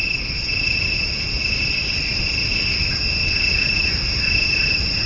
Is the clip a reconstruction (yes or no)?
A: no